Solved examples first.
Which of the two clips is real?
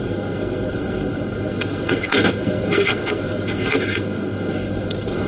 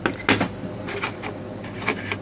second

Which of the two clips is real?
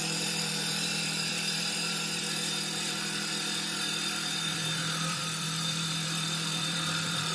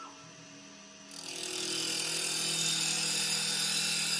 second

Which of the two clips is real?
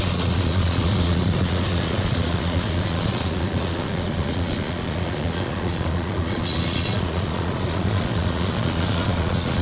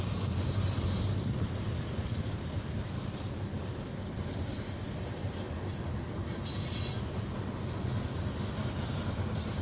second